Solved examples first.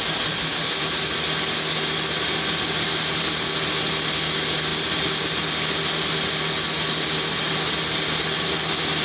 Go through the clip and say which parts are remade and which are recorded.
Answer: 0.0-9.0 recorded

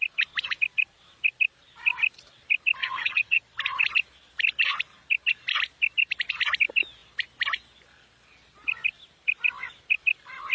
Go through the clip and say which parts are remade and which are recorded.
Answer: 0.0-2.8 recorded; 2.8-3.4 remade; 3.4-10.5 recorded

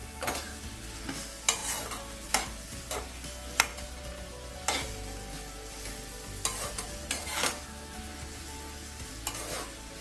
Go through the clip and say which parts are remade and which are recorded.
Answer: 0.0-3.7 recorded; 3.7-4.5 remade; 4.5-10.0 recorded